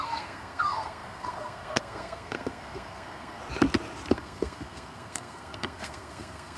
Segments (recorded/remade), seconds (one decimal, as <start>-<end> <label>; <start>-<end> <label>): 0.0-3.4 remade; 3.4-4.1 recorded; 4.1-6.6 remade